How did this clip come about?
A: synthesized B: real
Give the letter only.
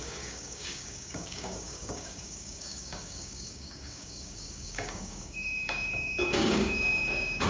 A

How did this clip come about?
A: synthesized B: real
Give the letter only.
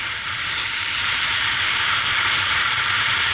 A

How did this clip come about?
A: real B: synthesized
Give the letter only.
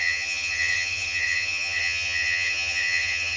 B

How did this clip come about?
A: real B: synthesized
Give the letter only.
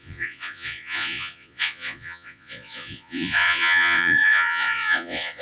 B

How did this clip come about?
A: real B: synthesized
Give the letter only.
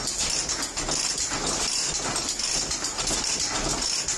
A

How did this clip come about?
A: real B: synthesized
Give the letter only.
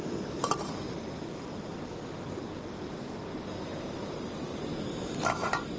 A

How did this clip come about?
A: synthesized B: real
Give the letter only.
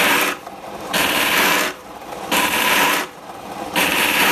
A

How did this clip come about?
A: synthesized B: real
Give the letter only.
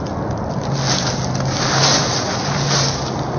B